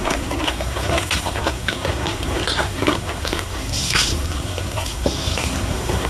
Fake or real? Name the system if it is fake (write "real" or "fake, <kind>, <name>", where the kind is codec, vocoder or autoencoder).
fake, codec, SNAC